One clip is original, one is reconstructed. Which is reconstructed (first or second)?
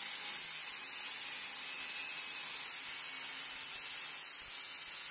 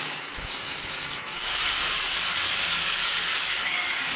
second